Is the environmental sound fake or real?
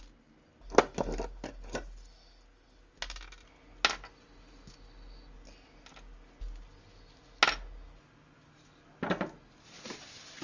real